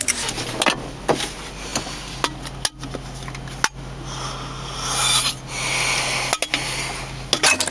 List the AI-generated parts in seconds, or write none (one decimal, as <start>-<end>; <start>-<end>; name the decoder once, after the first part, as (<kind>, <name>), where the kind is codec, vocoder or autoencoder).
none